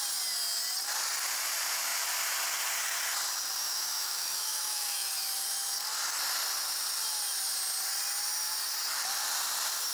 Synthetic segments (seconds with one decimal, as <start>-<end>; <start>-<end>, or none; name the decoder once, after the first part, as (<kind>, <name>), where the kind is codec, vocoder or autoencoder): 3.6-5.1 (autoencoder, DAC-VAE)